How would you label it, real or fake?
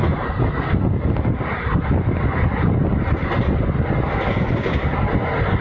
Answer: real